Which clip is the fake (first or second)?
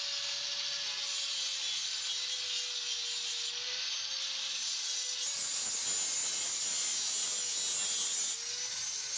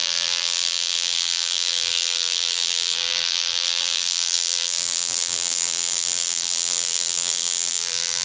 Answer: second